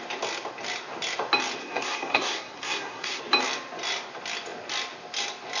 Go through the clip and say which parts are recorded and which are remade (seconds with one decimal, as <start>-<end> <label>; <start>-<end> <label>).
0.0-1.6 recorded; 1.6-3.2 remade; 3.2-5.6 recorded